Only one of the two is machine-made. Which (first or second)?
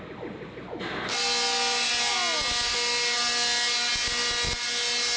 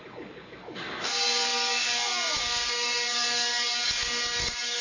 second